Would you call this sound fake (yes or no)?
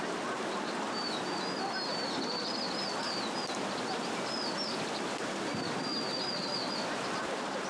no